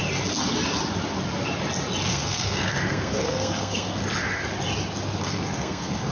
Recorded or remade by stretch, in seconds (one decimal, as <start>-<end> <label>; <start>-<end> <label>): 0.0-2.1 recorded; 2.1-4.0 remade; 4.0-5.2 recorded; 5.2-6.1 remade